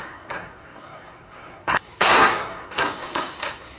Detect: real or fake fake